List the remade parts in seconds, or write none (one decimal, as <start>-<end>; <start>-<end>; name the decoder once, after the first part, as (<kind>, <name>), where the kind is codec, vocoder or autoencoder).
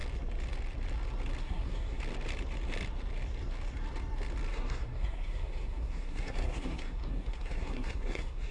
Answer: 1.4-2.0 (codec, SNAC); 4.5-8.5